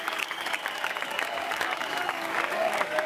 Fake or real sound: fake